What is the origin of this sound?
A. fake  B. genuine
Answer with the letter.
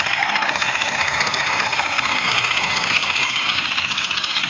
A